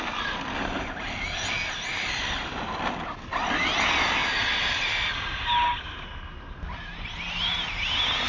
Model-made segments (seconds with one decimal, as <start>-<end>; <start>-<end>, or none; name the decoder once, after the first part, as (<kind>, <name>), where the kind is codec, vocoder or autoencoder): none